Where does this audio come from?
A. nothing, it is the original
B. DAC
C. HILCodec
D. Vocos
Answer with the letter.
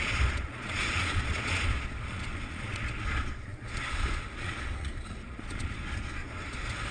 D